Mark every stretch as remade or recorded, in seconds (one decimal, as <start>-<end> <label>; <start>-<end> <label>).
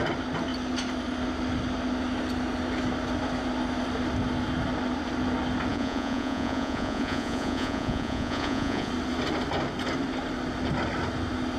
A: 0.0-5.7 recorded; 5.7-8.9 remade; 8.9-11.6 recorded